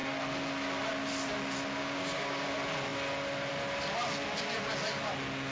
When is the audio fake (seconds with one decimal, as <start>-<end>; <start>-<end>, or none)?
1.8-2.5